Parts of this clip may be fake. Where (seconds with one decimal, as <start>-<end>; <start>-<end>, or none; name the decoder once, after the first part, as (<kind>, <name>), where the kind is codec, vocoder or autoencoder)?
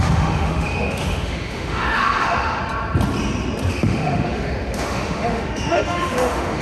0.0-2.6 (autoencoder, DAC-VAE); 3.7-6.6